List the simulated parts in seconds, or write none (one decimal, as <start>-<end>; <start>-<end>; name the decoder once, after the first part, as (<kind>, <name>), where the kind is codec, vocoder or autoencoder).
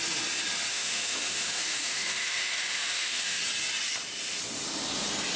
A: 0.7-3.4 (autoencoder, DAC-VAE)